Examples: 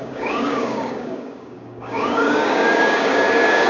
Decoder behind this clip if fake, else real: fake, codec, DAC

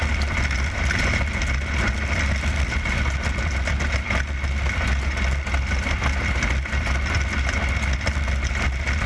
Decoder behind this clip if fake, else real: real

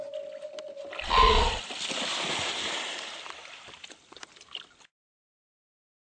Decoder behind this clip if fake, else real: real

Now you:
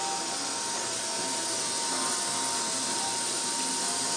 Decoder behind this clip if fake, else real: real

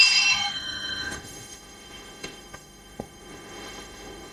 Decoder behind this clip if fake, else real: fake, autoencoder, DAC-VAE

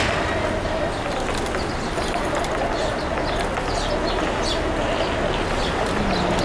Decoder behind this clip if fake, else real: real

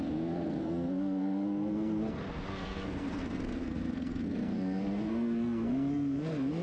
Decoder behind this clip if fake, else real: fake, codec, SNAC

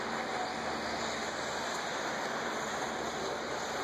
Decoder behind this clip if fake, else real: real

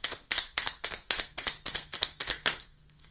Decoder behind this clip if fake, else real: fake, codec, SNAC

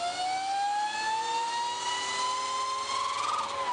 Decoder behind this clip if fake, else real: real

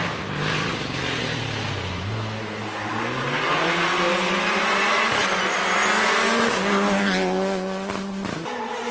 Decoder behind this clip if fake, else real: real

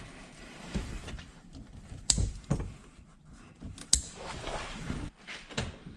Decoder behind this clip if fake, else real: fake, vocoder, BigVGAN v2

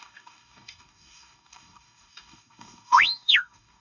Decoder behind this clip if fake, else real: fake, codec, DAC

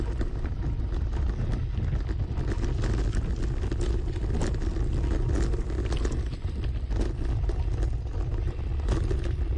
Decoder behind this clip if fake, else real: real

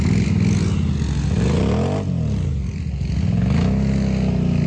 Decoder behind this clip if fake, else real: real